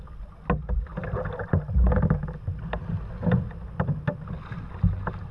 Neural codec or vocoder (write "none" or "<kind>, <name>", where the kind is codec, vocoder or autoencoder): none